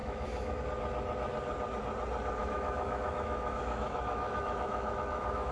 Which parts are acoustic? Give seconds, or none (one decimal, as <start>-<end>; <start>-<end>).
0.6-2.4